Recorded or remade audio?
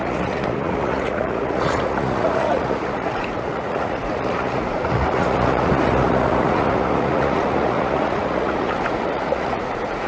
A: remade